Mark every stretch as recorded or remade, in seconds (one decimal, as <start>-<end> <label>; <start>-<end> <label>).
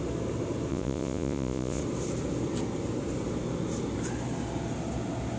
0.0-0.7 recorded; 0.7-1.8 remade; 1.8-5.4 recorded